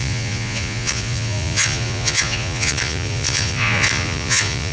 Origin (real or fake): fake